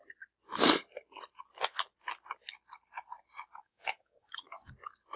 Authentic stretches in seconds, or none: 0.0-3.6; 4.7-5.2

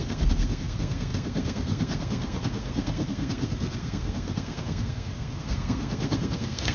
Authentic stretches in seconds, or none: none

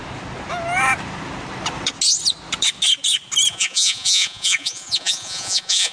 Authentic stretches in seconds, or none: 0.0-3.5

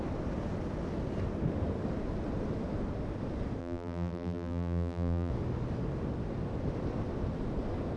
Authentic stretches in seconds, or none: 0.0-3.6; 5.3-8.0

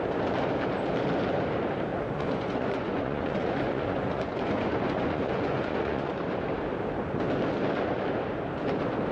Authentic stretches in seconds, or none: 0.0-1.9; 6.1-9.1

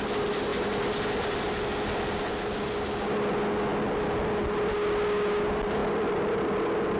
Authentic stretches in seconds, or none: 0.0-7.0